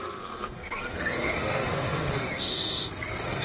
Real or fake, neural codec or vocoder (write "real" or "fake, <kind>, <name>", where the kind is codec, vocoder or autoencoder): fake, codec, SNAC